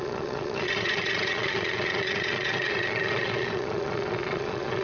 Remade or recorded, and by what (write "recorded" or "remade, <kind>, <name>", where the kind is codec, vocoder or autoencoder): remade, vocoder, Vocos